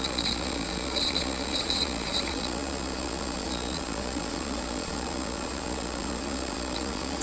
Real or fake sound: fake